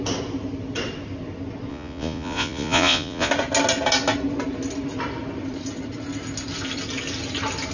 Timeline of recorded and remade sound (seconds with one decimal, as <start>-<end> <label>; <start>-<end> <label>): 0.0-1.7 recorded; 1.7-3.3 remade; 3.3-7.7 recorded